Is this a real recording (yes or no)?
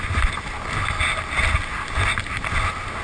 yes